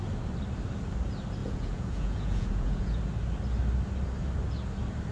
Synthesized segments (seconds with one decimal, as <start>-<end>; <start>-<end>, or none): 1.4-3.0